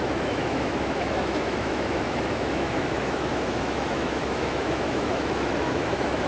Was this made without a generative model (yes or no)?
no